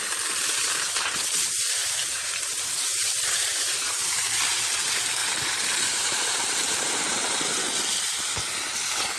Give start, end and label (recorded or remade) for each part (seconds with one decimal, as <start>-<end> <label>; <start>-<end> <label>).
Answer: 0.0-7.6 remade; 7.6-8.2 recorded; 8.2-9.2 remade